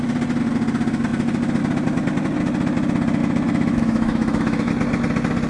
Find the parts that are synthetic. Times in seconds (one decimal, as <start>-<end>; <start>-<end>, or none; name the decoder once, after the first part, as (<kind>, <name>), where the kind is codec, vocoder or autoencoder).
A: 3.2-4.7 (autoencoder, DAC-VAE)